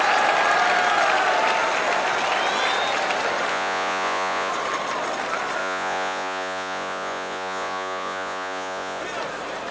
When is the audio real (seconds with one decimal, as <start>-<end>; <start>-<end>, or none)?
0.0-3.5; 4.5-5.6; 9.0-9.7

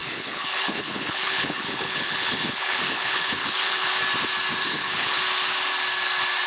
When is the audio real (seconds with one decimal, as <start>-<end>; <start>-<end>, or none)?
3.9-4.6; 5.2-6.5